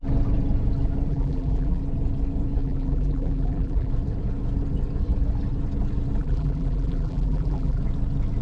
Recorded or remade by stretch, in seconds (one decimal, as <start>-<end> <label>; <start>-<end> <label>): 0.0-1.1 recorded; 1.1-1.8 remade; 1.8-2.6 recorded; 2.6-3.9 remade; 3.9-6.2 recorded; 6.2-7.8 remade; 7.8-8.4 recorded